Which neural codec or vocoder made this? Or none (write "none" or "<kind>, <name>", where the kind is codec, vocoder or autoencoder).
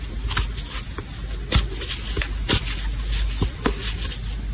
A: none